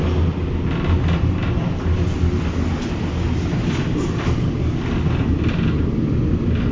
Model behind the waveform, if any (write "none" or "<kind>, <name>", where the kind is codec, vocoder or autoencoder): none